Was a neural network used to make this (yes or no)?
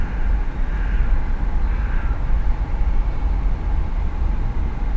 no